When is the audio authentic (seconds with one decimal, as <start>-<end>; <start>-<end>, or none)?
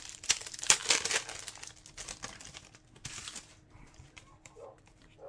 0.8-3.1